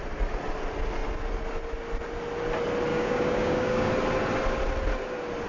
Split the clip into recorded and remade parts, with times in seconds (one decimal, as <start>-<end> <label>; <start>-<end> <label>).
0.0-2.9 recorded; 2.9-3.9 remade; 3.9-5.5 recorded